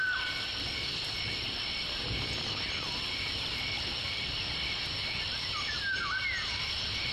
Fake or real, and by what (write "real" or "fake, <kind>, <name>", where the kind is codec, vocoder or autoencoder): real